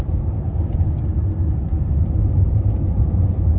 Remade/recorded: recorded